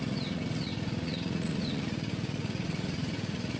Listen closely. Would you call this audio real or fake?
fake